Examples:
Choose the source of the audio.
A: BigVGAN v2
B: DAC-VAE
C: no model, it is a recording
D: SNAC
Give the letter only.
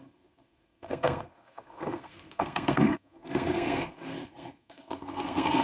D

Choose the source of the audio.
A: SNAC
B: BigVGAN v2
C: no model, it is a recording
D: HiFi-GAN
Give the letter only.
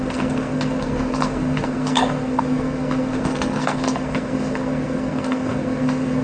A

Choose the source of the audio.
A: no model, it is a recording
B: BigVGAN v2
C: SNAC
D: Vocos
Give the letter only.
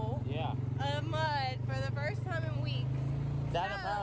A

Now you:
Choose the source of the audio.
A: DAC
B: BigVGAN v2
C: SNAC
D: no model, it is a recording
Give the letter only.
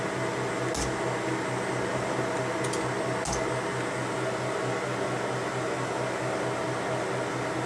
D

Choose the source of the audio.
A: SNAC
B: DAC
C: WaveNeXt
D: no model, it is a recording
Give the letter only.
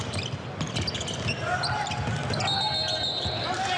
D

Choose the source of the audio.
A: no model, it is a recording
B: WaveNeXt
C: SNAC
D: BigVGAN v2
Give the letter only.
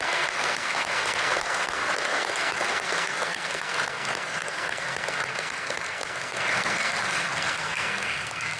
C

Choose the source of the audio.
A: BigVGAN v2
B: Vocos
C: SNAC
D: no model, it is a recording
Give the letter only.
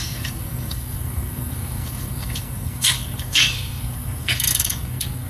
C